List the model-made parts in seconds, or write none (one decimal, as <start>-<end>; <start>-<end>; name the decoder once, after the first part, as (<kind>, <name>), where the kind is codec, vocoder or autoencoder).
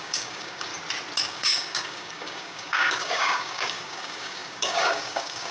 0.0-0.7 (codec, DAC); 1.2-5.5